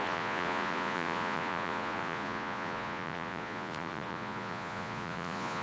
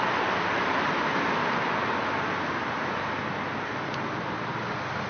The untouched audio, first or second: second